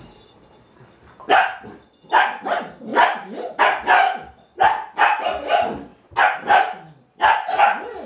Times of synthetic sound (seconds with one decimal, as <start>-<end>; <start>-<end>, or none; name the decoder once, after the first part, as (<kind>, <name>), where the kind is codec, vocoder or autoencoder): 2.9-3.6 (vocoder, BigVGAN v2); 5.9-6.6